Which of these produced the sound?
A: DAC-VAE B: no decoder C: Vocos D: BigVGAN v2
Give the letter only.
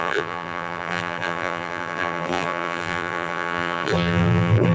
D